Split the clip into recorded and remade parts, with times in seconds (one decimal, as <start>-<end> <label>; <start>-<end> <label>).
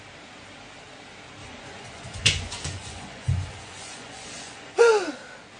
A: 0.0-1.4 recorded; 1.4-4.8 remade; 4.8-5.6 recorded